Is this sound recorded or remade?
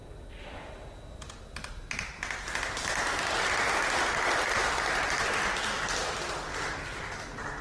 recorded